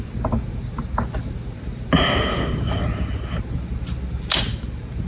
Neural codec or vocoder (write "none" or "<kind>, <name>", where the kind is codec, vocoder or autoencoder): none